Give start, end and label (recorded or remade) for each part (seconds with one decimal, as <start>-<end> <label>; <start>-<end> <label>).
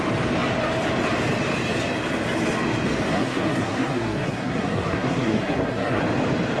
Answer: 0.0-3.1 recorded; 3.1-6.0 remade; 6.0-6.6 recorded